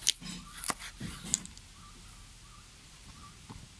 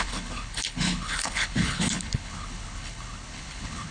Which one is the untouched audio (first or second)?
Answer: first